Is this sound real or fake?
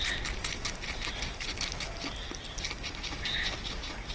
real